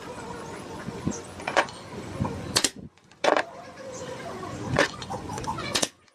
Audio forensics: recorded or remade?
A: remade